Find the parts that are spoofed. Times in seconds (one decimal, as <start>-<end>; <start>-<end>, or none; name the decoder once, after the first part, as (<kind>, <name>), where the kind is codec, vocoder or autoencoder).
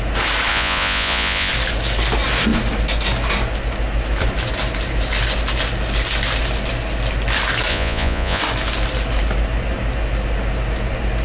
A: 0.5-1.5 (vocoder, Vocos); 7.7-8.4